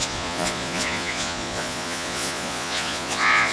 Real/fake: fake